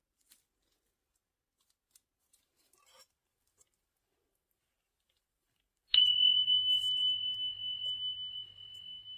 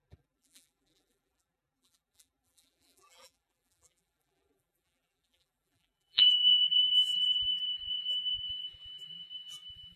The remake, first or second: second